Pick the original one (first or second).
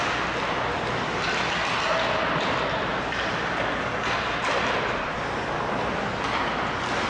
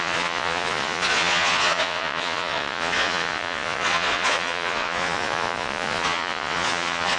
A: first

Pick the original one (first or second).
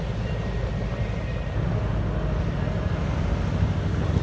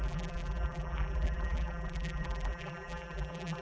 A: first